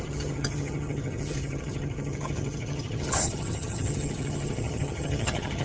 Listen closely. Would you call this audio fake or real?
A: fake